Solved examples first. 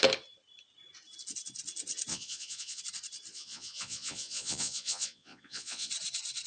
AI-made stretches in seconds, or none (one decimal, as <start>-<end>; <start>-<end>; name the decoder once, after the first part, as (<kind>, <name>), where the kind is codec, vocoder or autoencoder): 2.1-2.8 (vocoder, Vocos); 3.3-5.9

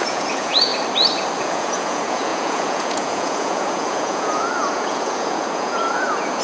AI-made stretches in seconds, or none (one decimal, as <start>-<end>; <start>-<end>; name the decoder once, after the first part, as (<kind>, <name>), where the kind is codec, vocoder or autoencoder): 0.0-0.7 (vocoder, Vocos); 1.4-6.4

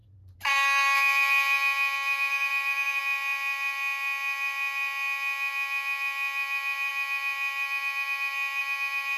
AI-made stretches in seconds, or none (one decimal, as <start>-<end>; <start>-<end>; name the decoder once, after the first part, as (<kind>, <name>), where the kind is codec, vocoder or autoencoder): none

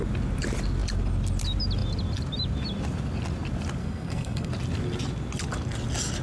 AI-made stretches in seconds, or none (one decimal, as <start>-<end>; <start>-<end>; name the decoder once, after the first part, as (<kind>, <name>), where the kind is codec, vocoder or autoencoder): 3.8-4.5 (codec, SNAC)

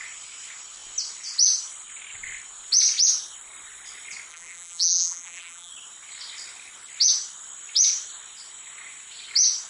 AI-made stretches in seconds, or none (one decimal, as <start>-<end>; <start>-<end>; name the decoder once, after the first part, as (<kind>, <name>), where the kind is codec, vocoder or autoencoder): 4.3-5.7 (vocoder, BigVGAN v2)